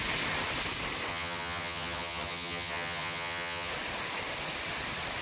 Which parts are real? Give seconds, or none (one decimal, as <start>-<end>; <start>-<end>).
0.0-1.1; 3.7-5.2